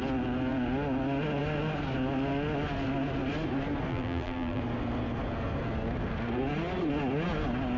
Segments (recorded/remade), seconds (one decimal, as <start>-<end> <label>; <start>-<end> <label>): 0.0-3.9 recorded; 3.9-4.6 remade; 4.6-7.8 recorded